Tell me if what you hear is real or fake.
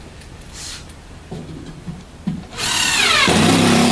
fake